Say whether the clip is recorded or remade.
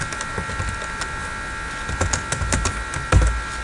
recorded